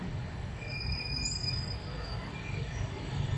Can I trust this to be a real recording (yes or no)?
no